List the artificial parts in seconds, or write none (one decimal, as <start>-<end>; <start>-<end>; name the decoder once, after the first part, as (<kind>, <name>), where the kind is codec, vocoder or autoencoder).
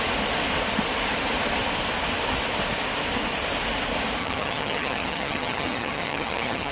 4.2-6.7 (vocoder, HiFi-GAN)